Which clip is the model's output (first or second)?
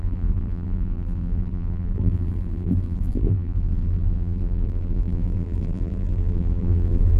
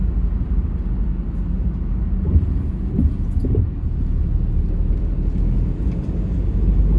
first